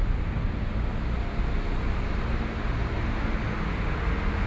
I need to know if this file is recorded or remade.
recorded